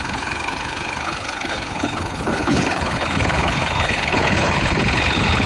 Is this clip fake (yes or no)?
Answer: yes